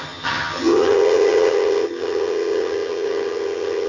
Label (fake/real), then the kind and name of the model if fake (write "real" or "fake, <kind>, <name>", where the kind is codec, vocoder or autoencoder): fake, vocoder, HiFi-GAN